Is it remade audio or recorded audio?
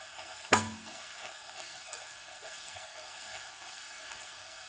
remade